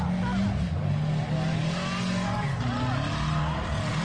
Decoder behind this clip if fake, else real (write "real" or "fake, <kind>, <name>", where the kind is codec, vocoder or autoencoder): real